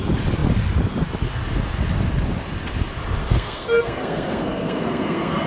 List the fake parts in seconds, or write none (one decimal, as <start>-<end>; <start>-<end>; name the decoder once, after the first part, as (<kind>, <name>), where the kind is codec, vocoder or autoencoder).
3.2-5.5 (codec, SNAC)